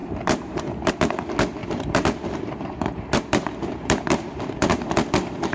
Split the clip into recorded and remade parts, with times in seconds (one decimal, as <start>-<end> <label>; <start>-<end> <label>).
0.0-0.9 remade; 0.9-1.6 recorded; 1.6-4.9 remade; 4.9-5.5 recorded